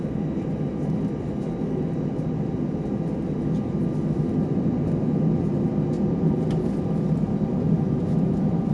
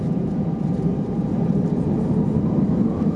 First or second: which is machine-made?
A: second